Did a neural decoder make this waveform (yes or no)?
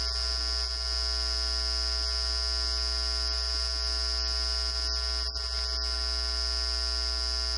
no